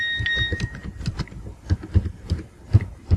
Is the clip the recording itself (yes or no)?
no